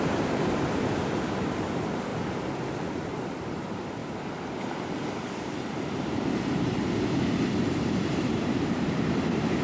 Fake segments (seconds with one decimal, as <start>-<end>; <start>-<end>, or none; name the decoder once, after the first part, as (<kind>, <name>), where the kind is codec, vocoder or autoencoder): 0.0-2.1 (vocoder, BigVGAN v2); 2.9-4.0; 5.4-9.6